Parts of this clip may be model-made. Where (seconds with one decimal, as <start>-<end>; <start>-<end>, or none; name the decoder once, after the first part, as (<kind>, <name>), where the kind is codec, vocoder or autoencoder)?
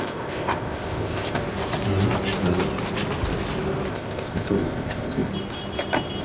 0.0-1.4 (codec, ZipCodec); 3.9-5.3